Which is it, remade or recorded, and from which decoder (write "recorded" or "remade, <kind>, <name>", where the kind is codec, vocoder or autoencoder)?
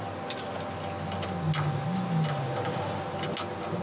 recorded